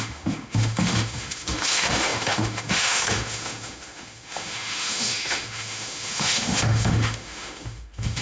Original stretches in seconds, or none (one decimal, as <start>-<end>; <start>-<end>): none